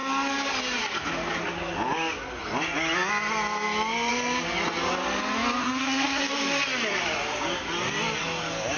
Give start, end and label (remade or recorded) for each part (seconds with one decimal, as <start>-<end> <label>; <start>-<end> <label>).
0.0-5.6 recorded; 5.6-6.2 remade; 6.2-8.8 recorded